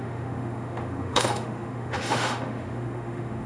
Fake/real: fake